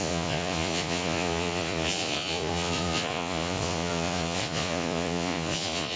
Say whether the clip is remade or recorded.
remade